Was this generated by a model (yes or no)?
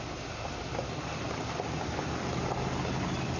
no